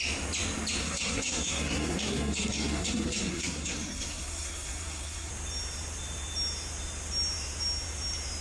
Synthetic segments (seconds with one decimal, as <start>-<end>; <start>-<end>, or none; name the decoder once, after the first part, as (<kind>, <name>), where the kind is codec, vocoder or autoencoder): 0.8-5.3 (codec, SNAC)